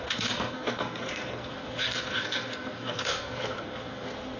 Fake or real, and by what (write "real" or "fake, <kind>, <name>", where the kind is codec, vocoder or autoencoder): fake, codec, SNAC